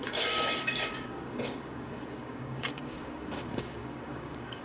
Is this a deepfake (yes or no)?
yes